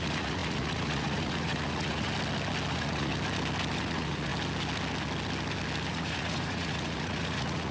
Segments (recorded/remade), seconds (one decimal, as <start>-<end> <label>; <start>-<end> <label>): 0.0-2.1 remade; 2.1-2.7 recorded; 2.7-3.1 remade; 3.1-3.8 recorded; 3.8-4.3 remade; 4.3-5.9 recorded; 5.9-7.7 remade